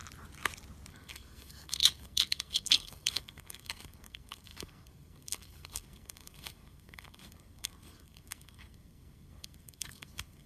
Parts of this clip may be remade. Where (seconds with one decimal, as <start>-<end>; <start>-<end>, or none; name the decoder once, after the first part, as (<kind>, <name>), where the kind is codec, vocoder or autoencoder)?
0.9-10.5 (codec, SNAC)

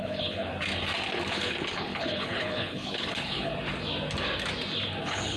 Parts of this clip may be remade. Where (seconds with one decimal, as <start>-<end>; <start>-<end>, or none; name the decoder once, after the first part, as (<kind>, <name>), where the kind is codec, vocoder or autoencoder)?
0.0-0.5 (codec, HILCodec); 1.3-3.5; 5.0-5.4

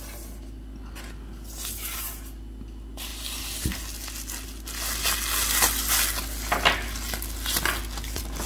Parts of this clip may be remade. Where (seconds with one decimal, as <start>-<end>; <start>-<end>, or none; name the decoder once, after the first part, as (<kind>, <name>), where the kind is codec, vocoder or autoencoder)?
none

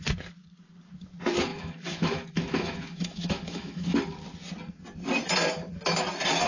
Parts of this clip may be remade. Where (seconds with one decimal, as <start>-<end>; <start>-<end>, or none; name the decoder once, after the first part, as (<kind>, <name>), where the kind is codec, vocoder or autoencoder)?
1.5-4.0 (autoencoder, DAC-VAE)

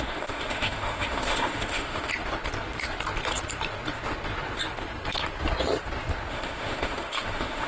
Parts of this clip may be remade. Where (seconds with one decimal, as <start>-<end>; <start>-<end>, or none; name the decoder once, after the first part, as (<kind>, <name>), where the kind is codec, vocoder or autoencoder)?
0.0-2.1 (autoencoder, DAC-VAE); 6.3-7.7

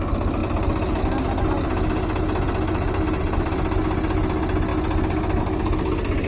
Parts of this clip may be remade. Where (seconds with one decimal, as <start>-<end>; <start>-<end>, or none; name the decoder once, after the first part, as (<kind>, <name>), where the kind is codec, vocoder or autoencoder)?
2.7-3.5 (vocoder, BigVGAN v2)